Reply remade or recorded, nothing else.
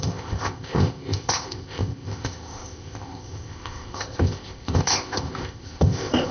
remade